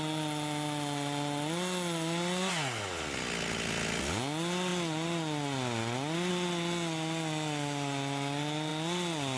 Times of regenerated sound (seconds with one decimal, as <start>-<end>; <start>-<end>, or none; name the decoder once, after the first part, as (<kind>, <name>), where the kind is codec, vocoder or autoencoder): none